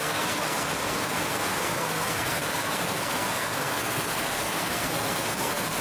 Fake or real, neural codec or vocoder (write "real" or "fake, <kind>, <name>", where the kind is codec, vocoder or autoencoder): fake, codec, SNAC